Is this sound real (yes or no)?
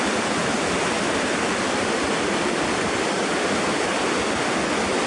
yes